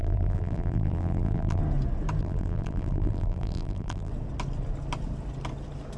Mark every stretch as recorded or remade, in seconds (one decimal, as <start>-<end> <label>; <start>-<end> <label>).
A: 0.0-1.6 remade; 1.6-2.2 recorded; 2.2-4.1 remade; 4.1-6.0 recorded